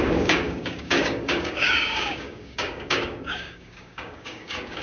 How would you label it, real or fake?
fake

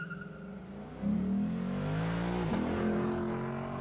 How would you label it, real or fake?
real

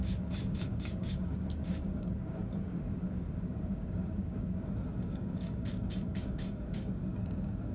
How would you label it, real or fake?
fake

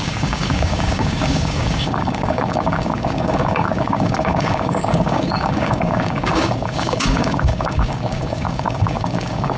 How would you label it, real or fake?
fake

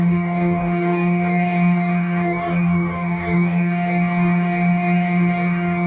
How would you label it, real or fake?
fake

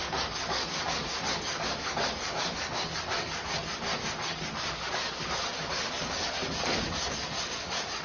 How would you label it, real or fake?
fake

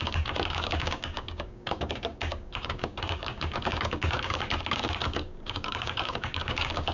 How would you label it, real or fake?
fake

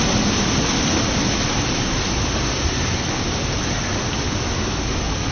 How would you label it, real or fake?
real